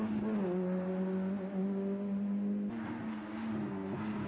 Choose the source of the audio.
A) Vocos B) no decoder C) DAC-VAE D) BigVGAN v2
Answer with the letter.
B